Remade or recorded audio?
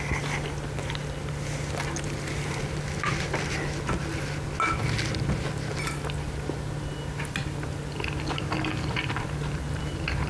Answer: recorded